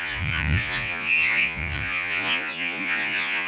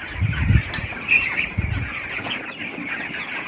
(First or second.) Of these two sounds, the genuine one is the second